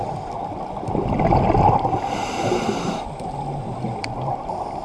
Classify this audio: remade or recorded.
recorded